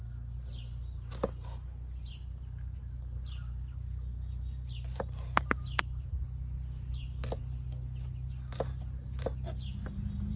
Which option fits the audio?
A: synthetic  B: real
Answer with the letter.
B